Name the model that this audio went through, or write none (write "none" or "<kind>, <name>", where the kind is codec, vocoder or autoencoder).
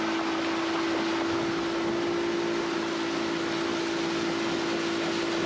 none